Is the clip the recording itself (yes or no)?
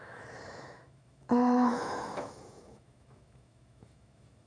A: no